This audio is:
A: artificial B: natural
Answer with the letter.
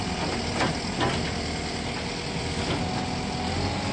B